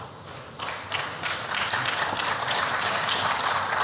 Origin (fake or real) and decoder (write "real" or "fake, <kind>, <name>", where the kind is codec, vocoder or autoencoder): real